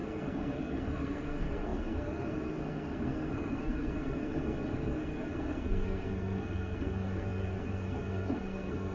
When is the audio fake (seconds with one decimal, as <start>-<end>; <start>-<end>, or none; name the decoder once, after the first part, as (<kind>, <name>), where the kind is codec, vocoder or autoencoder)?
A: 0.0-8.9 (codec, SNAC)